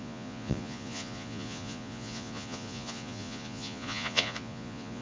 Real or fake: fake